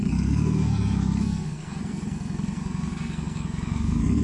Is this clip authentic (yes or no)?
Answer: no